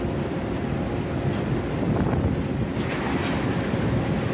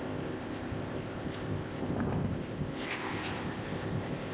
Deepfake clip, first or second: second